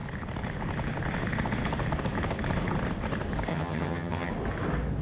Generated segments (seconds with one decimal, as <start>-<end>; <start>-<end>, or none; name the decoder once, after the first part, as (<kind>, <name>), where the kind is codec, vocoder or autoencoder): 3.5-4.3 (vocoder, HiFi-GAN)